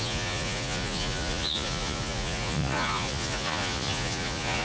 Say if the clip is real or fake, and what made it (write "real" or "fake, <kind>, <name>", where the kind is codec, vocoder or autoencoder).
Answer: fake, vocoder, Vocos